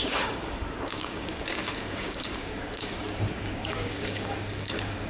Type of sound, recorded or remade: remade